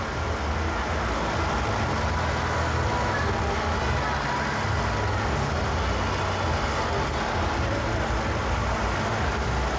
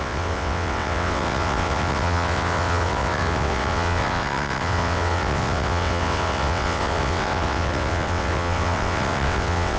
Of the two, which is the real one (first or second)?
first